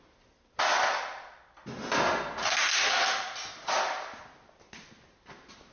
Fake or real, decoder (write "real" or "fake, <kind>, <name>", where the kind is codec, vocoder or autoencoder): real